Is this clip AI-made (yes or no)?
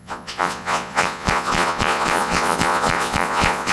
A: yes